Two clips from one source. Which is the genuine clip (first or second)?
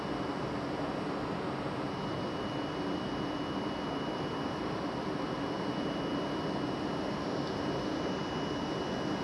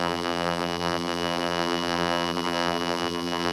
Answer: first